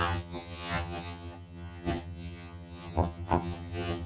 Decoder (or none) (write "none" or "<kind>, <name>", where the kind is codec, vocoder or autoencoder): vocoder, HiFi-GAN